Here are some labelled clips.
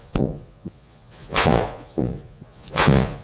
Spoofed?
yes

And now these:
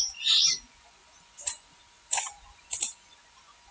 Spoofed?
yes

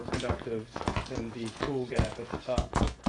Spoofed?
yes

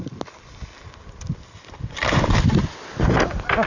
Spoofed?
no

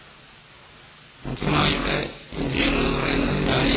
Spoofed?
no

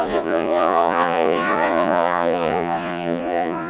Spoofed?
yes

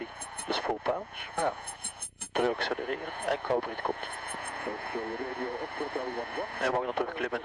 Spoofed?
yes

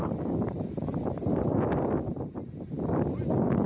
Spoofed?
no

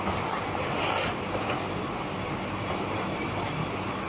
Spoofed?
no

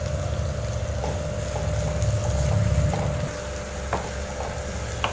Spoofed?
no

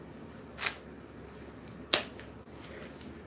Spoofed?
no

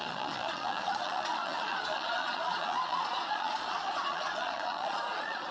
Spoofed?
yes